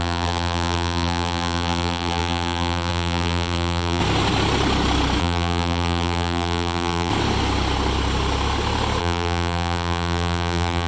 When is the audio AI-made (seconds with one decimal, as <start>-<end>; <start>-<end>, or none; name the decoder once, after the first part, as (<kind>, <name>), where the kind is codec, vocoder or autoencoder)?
0.0-4.0 (vocoder, BigVGAN v2); 5.2-7.1; 9.0-10.9